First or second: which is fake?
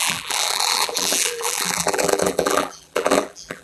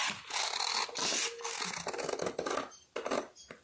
first